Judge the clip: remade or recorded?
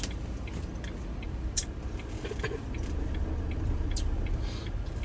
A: recorded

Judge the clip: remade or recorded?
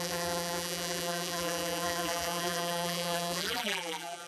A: remade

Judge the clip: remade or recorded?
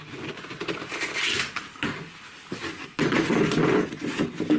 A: recorded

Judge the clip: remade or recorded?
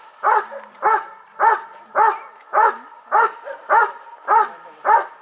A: recorded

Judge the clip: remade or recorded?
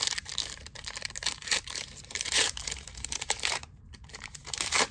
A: remade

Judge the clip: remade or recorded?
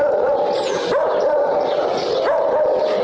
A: recorded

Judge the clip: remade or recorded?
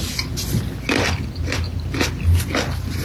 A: recorded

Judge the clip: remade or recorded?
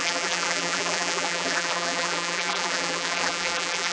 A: remade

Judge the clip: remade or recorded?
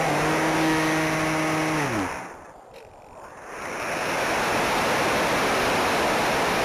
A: recorded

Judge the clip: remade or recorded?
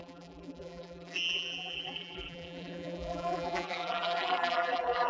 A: remade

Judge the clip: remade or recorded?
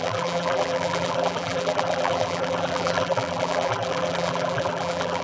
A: remade